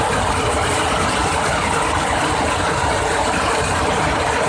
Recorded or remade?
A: recorded